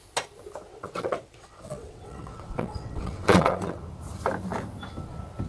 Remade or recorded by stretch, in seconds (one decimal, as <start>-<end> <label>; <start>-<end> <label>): 0.0-0.7 recorded; 0.7-3.8 remade; 3.8-5.5 recorded